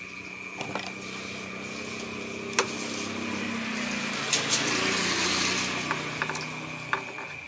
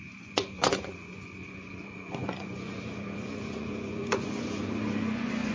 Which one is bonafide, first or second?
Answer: first